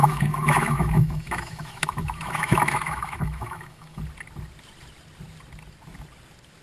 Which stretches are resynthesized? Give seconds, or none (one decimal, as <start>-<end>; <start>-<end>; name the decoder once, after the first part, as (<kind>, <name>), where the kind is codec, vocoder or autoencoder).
0.0-4.0 (autoencoder, DAC-VAE)